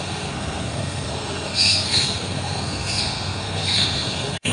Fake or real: fake